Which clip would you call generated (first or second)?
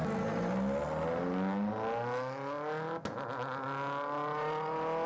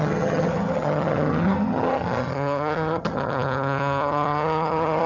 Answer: second